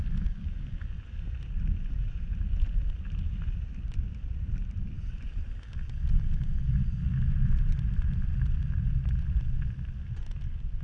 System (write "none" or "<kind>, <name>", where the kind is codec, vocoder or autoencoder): none